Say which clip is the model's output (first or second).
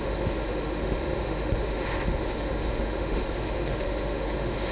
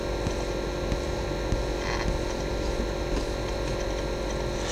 first